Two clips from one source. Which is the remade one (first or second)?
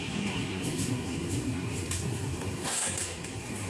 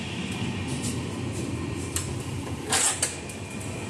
first